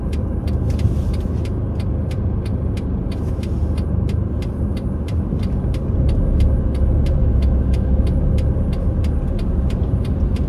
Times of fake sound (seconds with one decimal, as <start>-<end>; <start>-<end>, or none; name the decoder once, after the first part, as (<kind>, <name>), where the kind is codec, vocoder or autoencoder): 7.2-8.0 (autoencoder, DAC-VAE)